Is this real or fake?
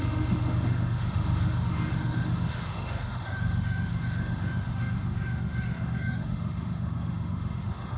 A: fake